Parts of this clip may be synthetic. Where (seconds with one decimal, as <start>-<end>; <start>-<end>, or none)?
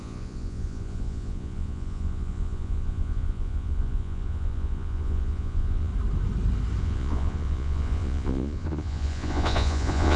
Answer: 0.0-5.9; 6.8-10.2